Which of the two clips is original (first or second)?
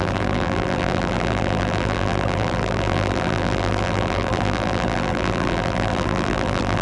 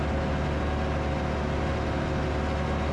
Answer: second